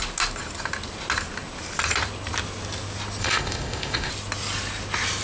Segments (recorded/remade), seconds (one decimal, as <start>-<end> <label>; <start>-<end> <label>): 0.0-3.2 recorded; 3.2-4.1 remade; 4.1-5.2 recorded